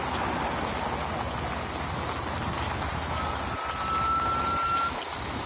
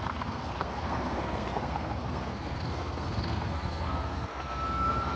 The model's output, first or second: second